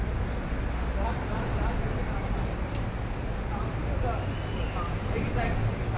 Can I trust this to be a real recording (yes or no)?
yes